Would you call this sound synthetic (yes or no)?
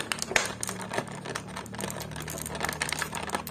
no